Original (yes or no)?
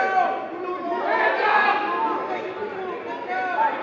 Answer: yes